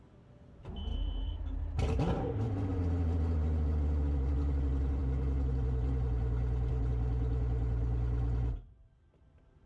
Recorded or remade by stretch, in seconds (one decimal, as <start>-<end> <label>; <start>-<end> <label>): 0.0-9.7 recorded